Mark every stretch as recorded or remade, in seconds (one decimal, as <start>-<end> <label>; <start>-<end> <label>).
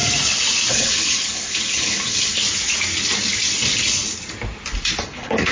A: 0.0-0.7 recorded; 0.7-2.4 remade; 2.4-5.0 recorded; 5.0-5.5 remade